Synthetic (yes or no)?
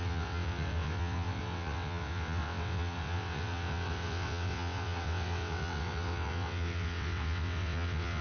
yes